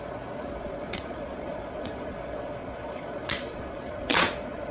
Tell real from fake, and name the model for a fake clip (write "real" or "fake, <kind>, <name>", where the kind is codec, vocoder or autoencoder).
fake, vocoder, Vocos